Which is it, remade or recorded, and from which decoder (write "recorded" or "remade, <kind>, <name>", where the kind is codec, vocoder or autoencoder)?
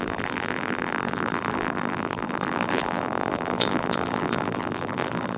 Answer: remade, vocoder, BigVGAN v2